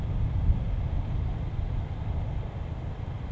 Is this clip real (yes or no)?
yes